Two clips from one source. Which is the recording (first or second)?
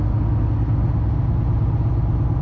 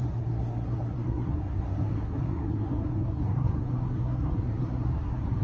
first